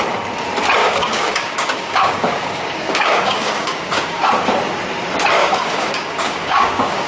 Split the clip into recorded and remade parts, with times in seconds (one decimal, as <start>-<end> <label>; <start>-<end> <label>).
0.0-0.8 recorded; 0.8-4.3 remade; 4.3-5.4 recorded; 5.4-7.1 remade